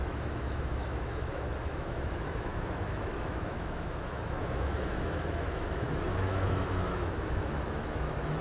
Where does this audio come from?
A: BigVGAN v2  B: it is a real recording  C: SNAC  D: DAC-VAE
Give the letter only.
D